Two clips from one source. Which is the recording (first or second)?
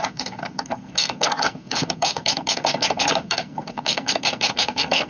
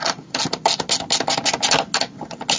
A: second